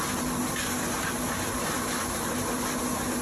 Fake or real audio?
real